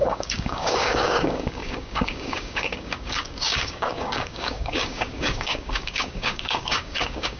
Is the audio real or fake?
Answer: fake